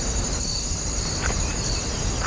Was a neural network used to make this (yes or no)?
yes